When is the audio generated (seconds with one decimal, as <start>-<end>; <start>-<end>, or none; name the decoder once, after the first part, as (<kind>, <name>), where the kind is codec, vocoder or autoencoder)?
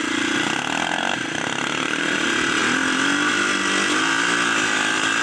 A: none